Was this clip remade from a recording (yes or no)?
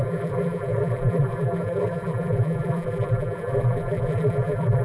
yes